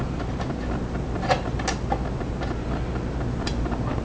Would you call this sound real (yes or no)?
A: yes